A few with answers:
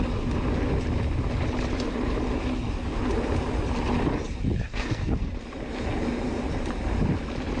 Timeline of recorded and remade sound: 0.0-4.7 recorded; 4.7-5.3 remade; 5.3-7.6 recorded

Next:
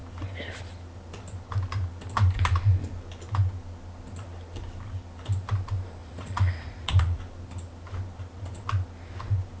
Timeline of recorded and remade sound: 0.0-6.0 recorded; 6.0-7.2 remade; 7.2-9.6 recorded

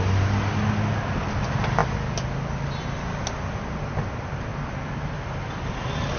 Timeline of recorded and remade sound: 0.0-6.2 recorded

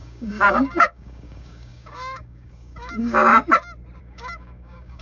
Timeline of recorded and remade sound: 0.0-3.3 remade; 3.3-4.0 recorded; 4.0-5.0 remade